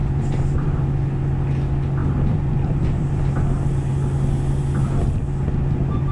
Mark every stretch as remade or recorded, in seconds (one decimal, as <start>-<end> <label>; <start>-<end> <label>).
0.0-2.0 recorded; 2.0-3.2 remade; 3.2-6.1 recorded